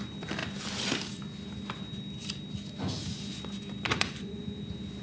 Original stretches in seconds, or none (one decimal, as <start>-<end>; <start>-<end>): 0.0-3.9; 4.4-5.0